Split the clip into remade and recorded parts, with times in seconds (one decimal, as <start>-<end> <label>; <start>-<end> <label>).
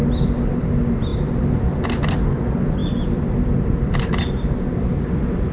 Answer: 0.0-5.5 recorded